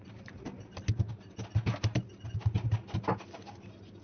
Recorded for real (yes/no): yes